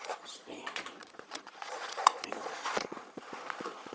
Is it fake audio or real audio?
fake